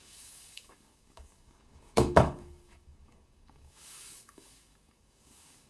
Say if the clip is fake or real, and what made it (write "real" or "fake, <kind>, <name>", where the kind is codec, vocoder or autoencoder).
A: fake, codec, DAC